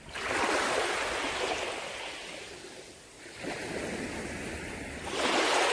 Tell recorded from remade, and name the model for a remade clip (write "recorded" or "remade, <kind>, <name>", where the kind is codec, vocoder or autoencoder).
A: recorded